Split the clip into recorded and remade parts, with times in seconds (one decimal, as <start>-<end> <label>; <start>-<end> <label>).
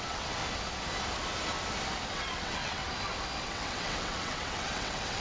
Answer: 0.0-0.4 remade; 0.4-2.1 recorded; 2.1-2.8 remade; 2.8-3.4 recorded; 3.4-5.2 remade